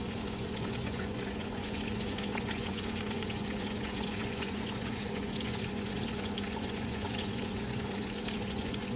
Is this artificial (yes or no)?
yes